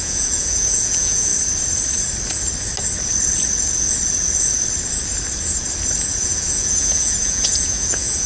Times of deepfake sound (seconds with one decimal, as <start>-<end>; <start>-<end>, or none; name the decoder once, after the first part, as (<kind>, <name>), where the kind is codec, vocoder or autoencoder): 0.0-1.3 (vocoder, Vocos); 6.2-8.3